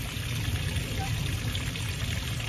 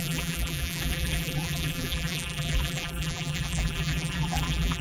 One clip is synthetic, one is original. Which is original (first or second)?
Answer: first